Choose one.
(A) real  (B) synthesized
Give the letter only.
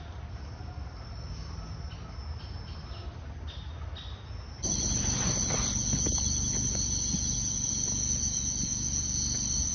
A